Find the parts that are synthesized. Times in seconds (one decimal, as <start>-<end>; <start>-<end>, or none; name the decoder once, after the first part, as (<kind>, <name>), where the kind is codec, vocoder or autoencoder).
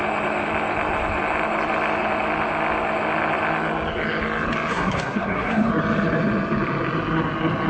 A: 4.7-5.7 (codec, SNAC)